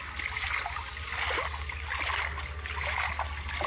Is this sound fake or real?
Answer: real